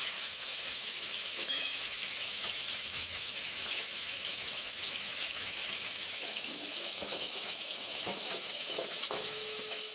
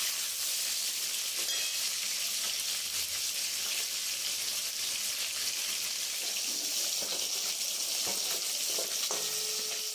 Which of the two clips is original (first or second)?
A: second